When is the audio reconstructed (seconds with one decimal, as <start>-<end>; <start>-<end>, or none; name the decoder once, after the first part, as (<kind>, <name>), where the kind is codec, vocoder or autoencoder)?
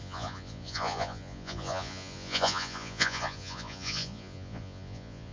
0.0-5.3 (vocoder, Vocos)